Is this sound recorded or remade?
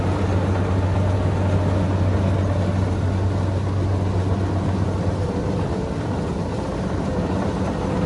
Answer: recorded